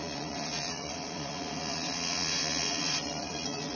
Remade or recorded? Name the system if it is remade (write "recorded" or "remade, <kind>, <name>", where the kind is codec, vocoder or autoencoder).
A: remade, vocoder, Vocos